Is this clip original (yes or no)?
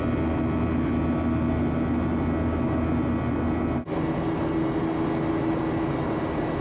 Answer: yes